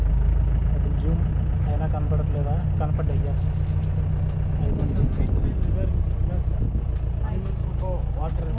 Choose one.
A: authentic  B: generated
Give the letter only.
A